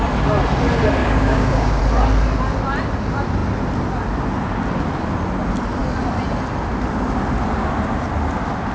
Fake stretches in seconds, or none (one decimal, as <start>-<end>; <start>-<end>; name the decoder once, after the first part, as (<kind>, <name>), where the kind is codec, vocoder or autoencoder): 1.0-1.8 (codec, DAC)